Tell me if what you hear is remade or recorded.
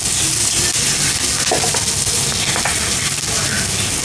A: recorded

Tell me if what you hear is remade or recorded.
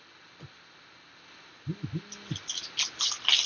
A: recorded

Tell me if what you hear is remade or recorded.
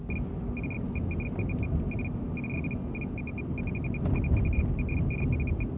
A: recorded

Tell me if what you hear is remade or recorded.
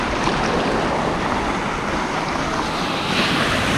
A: recorded